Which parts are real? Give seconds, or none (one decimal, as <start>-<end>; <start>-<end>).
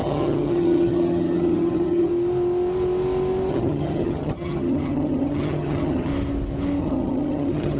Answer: 2.1-3.5; 6.1-6.8